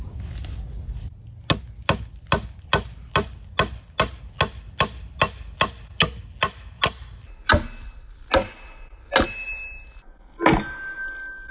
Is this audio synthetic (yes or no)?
no